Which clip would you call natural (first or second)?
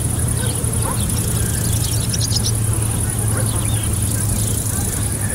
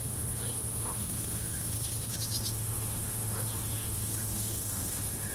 first